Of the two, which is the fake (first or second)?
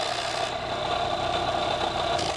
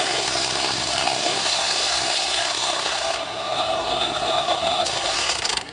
second